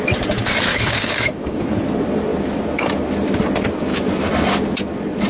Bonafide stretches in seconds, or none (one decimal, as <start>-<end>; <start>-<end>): 0.0-0.7; 1.8-5.3